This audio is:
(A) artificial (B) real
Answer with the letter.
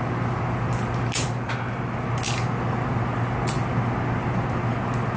B